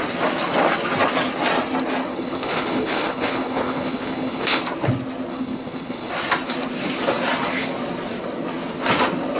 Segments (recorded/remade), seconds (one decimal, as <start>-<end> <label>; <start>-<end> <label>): 0.0-2.1 recorded; 2.1-4.6 remade; 4.6-5.3 recorded; 5.3-6.1 remade; 6.1-9.4 recorded